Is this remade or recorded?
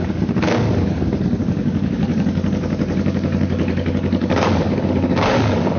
remade